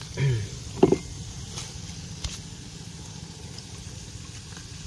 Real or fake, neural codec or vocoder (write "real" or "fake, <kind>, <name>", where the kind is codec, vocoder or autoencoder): real